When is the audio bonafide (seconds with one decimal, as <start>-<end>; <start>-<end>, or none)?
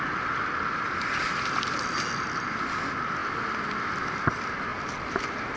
0.0-5.6